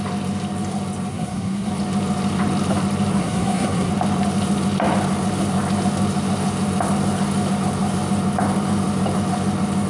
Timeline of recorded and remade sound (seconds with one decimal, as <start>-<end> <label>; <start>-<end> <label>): 0.0-1.1 recorded; 1.1-1.7 remade; 1.7-3.2 recorded; 3.2-3.9 remade; 3.9-9.9 recorded